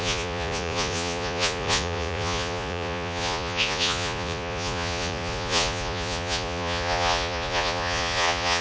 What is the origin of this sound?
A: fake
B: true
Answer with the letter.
A